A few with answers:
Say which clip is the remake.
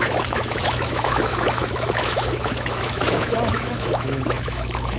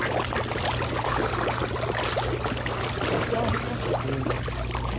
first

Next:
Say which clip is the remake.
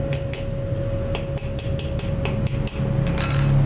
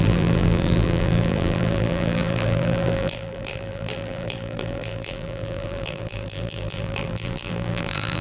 second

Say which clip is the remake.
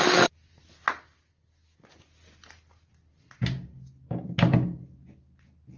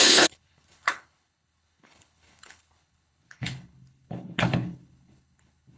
second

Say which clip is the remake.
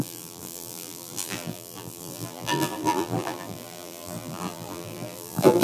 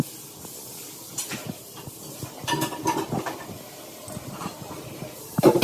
first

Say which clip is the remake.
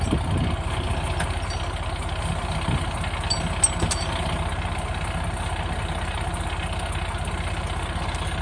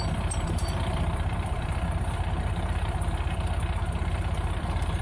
second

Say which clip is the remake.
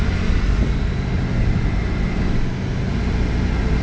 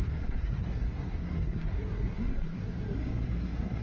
second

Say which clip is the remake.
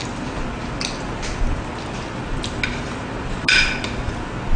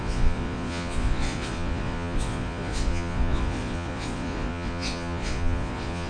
second